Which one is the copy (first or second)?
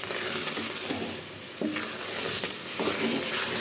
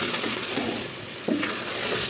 second